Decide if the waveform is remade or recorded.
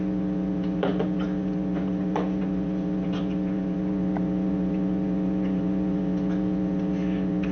remade